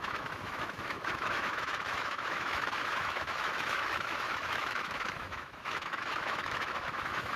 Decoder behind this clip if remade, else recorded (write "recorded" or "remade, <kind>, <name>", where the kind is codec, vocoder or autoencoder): remade, autoencoder, DAC-VAE